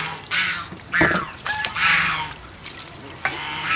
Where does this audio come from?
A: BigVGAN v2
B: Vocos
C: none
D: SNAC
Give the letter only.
A